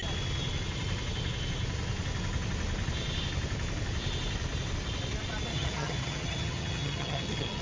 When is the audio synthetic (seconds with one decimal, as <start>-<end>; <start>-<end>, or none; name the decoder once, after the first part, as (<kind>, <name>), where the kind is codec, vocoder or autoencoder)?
5.5-7.6 (vocoder, HiFi-GAN)